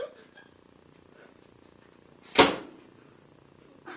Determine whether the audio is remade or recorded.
recorded